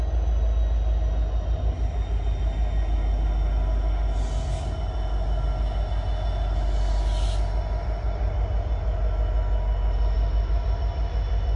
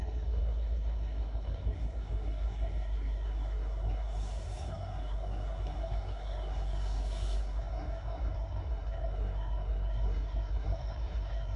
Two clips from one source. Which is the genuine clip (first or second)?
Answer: first